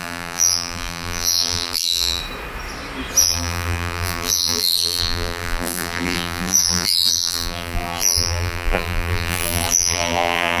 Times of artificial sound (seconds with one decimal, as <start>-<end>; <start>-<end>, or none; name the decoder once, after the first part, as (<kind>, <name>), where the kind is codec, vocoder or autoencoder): 0.0-2.2 (vocoder, BigVGAN v2); 3.2-10.6